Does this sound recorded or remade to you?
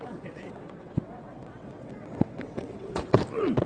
remade